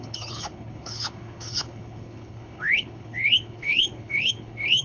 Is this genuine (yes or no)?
no